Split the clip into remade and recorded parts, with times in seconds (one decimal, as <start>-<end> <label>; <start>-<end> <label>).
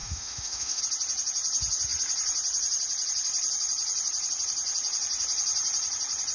0.0-0.8 remade; 0.8-6.3 recorded